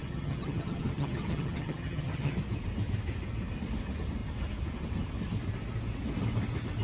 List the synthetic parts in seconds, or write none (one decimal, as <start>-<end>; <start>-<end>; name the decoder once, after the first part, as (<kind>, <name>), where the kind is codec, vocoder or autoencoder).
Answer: 0.0-2.4 (vocoder, HiFi-GAN)